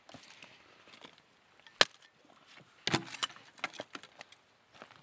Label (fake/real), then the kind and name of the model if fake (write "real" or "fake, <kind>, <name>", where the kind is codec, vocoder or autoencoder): real